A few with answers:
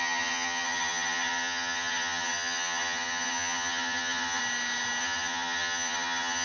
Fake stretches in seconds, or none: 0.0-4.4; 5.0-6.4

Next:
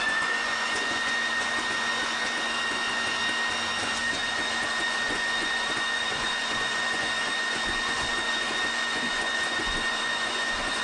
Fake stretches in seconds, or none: 0.0-3.2; 3.8-10.8

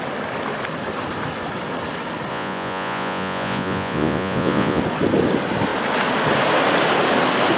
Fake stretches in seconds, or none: 2.3-4.8

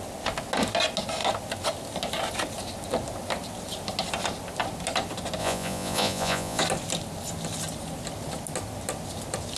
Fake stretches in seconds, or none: 5.4-6.6

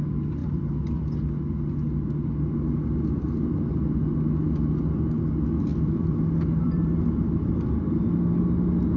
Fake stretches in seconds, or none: 0.4-1.0; 5.7-8.4

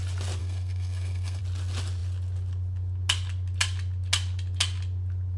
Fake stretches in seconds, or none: 0.4-1.4

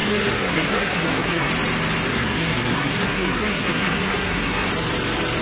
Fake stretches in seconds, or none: 0.0-1.5; 2.1-4.7

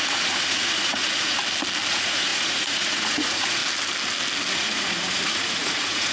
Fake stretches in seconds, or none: 0.0-1.4; 1.9-3.6; 4.5-6.1